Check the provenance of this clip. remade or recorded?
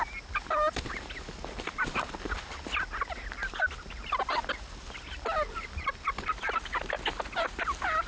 recorded